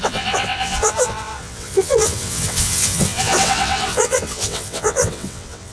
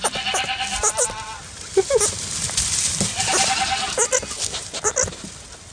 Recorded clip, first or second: second